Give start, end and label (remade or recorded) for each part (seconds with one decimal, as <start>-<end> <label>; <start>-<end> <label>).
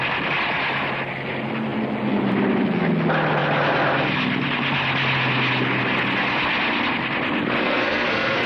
0.0-7.6 recorded; 7.6-8.5 remade